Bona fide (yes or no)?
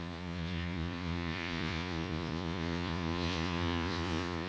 no